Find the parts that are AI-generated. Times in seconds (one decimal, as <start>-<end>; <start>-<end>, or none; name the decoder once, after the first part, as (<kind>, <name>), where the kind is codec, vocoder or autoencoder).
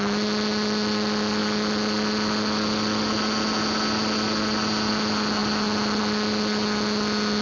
none